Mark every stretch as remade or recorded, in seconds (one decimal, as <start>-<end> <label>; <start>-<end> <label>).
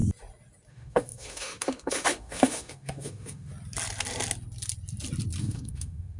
0.0-0.7 recorded; 0.7-3.5 remade; 3.5-5.4 recorded; 5.4-6.2 remade